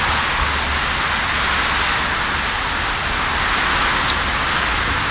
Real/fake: real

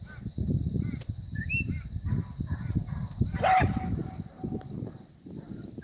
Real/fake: real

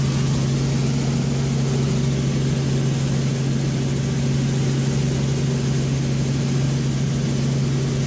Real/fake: real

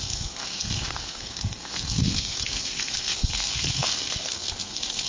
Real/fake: fake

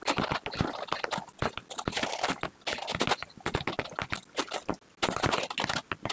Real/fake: real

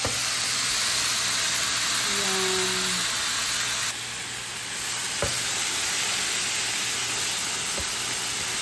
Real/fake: real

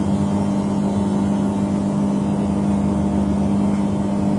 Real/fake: real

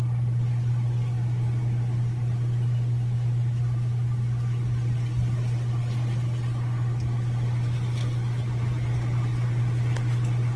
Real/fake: real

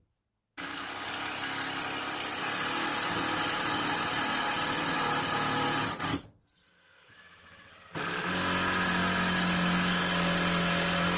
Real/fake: real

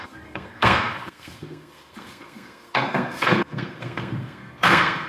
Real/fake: fake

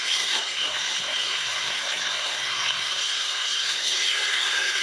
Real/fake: fake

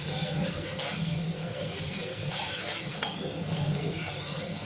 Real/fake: fake